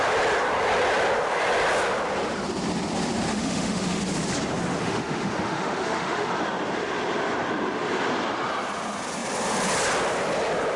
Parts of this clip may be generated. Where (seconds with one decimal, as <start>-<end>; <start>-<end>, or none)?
3.3-4.0; 4.8-6.3